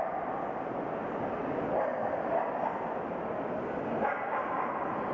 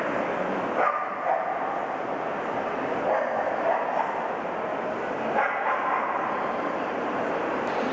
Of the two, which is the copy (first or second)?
first